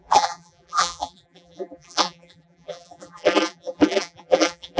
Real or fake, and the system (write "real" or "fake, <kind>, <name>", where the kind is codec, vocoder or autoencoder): fake, vocoder, BigVGAN v2